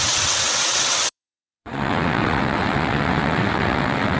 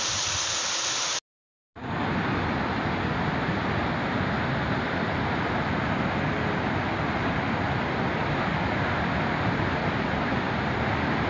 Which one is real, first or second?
second